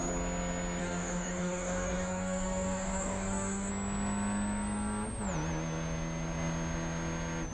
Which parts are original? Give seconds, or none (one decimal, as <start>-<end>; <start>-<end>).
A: 0.0-0.8; 3.7-7.5